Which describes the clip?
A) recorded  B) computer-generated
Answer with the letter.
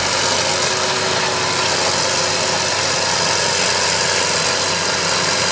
A